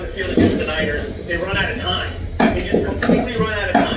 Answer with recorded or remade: recorded